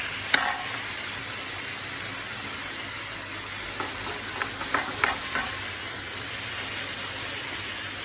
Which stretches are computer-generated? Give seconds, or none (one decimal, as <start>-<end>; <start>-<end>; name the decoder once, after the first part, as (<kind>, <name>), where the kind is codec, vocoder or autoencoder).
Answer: none